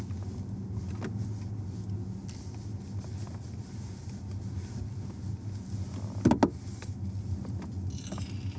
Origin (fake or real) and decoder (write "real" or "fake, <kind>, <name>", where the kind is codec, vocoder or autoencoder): real